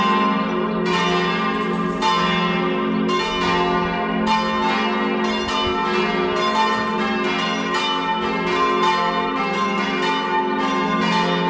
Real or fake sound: real